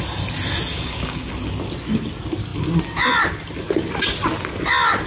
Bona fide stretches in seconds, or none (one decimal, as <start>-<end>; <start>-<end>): 0.0-0.7; 1.3-5.1